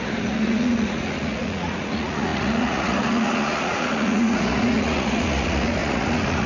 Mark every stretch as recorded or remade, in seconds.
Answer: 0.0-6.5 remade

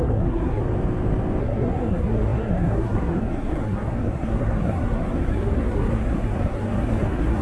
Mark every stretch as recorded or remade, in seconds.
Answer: 0.0-0.6 remade; 0.6-1.4 recorded; 1.4-7.4 remade

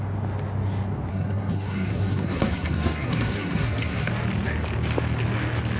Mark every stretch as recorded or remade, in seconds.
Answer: 0.0-1.1 recorded; 1.1-4.1 remade; 4.1-5.8 recorded

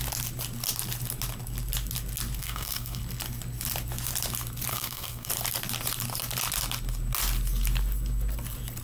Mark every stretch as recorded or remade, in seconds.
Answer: 0.0-2.4 recorded; 2.4-3.0 remade; 3.0-4.7 recorded; 4.7-5.3 remade; 5.3-8.8 recorded

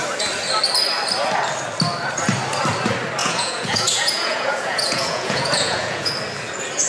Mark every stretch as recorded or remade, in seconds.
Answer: 0.0-3.2 recorded; 3.2-6.1 remade; 6.1-6.9 recorded

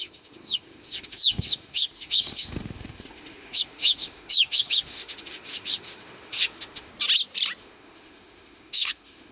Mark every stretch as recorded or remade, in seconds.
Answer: 0.0-6.9 remade; 6.9-7.6 recorded; 7.6-9.3 remade

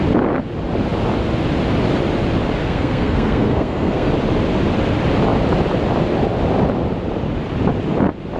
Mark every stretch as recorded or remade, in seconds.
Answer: 0.0-2.6 recorded; 2.6-4.1 remade; 4.1-8.4 recorded